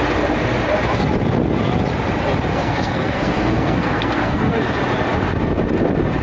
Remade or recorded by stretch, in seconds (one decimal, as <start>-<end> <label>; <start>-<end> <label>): 0.0-2.5 recorded; 2.5-4.6 remade; 4.6-6.2 recorded